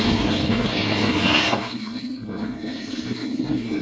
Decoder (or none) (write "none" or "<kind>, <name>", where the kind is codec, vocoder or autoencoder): codec, SNAC